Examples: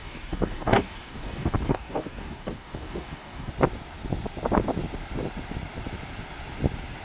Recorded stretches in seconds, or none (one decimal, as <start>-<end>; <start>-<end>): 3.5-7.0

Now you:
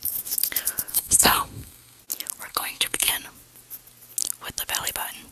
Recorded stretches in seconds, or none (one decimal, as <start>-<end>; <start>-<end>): 0.0-0.9; 2.0-2.5; 3.1-5.3

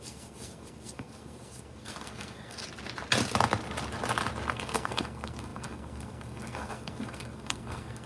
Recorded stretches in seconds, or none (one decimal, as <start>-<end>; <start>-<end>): 2.6-4.5

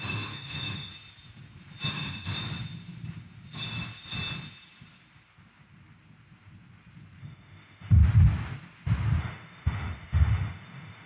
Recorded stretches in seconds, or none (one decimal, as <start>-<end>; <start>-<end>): 0.9-1.9; 2.4-7.2; 8.0-9.2